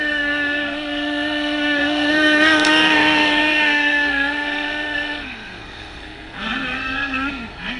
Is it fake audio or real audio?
fake